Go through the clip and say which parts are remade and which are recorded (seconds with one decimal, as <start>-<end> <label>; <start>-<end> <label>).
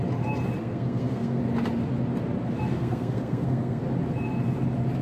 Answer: 0.0-0.6 recorded; 0.6-1.4 remade; 1.4-2.7 recorded; 2.7-3.8 remade; 3.8-5.0 recorded